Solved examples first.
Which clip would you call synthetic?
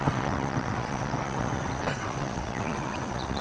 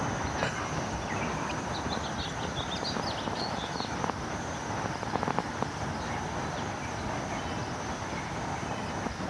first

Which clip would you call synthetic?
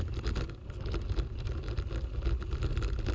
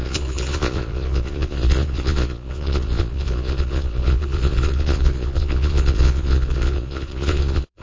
second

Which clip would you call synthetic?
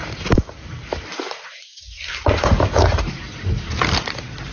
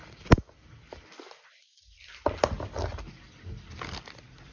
first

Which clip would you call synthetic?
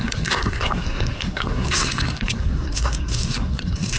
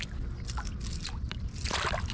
first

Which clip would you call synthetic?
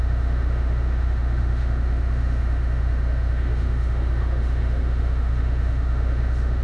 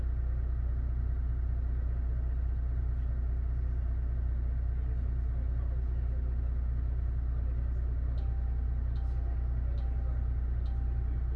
first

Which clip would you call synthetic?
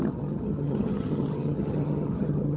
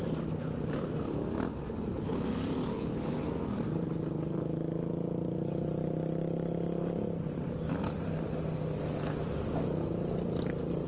first